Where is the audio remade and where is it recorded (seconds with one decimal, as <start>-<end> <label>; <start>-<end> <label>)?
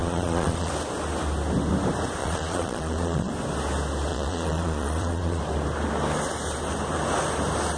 0.0-0.7 remade; 0.7-2.2 recorded; 2.2-3.3 remade; 3.3-4.1 recorded; 4.1-5.4 remade; 5.4-7.8 recorded